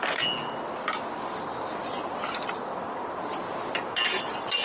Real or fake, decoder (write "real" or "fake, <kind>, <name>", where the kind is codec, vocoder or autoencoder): real